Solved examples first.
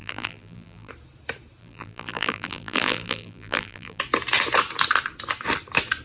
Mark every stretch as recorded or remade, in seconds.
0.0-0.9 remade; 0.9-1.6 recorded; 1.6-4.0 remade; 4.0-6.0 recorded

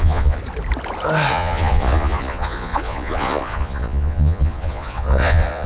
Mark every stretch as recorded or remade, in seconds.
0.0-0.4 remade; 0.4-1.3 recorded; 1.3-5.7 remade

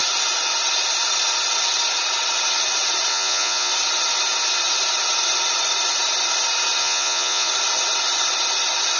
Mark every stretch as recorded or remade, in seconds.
0.0-3.1 recorded; 3.1-3.7 remade; 3.7-6.8 recorded; 6.8-7.5 remade; 7.5-9.0 recorded